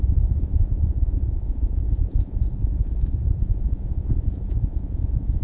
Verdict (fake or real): fake